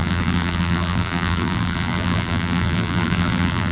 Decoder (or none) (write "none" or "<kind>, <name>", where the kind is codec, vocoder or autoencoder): vocoder, BigVGAN v2